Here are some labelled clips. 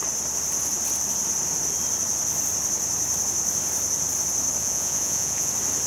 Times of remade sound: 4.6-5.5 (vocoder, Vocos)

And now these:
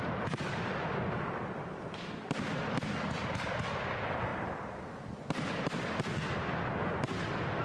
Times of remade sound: none